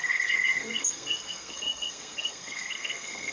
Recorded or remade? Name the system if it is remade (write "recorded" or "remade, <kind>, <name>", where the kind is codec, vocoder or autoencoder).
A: remade, codec, SNAC